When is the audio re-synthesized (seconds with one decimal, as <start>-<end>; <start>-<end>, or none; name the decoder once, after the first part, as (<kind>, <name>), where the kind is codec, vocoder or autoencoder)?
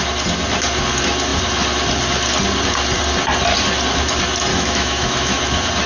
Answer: 4.5-5.4 (autoencoder, DAC-VAE)